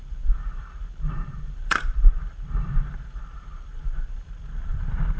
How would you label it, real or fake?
fake